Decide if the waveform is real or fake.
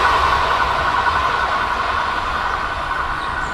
fake